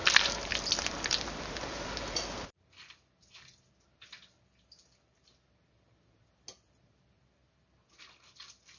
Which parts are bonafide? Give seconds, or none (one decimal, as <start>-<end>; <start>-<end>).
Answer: 0.0-8.8